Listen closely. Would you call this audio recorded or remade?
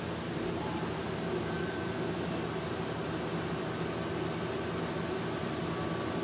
recorded